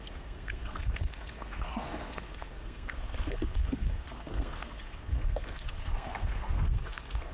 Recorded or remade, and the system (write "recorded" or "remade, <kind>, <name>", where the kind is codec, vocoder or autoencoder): remade, codec, SNAC